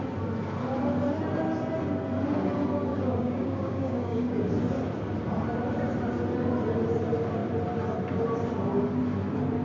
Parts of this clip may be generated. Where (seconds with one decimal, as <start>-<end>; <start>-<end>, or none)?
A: 2.9-4.5